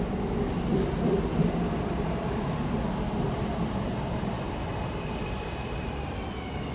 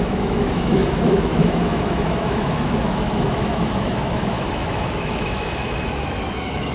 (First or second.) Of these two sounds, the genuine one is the first